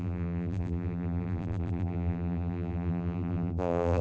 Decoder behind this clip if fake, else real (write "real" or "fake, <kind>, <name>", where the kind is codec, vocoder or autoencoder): fake, vocoder, BigVGAN v2